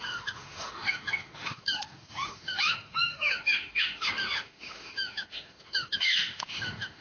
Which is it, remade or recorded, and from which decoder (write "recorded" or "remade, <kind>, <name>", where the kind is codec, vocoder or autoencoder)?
remade, autoencoder, DAC-VAE